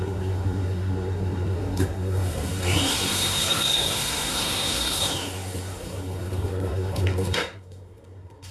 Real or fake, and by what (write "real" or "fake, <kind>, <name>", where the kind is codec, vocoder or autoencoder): fake, codec, SNAC